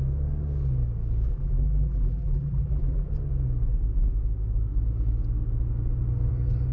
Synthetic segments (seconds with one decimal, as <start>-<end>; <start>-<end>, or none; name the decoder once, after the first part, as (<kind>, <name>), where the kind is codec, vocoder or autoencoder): 1.3-3.1 (vocoder, BigVGAN v2)